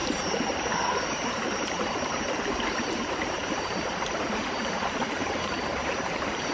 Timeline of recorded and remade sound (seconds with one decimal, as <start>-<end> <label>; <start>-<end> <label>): 0.0-6.5 remade